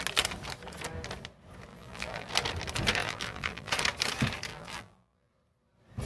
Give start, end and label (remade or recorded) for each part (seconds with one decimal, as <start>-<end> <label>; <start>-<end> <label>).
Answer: 0.0-1.7 recorded; 1.7-2.3 remade; 2.3-3.0 recorded; 3.0-3.7 remade; 3.7-4.5 recorded; 4.5-5.3 remade; 5.3-6.1 recorded